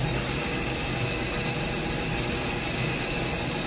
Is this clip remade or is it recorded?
recorded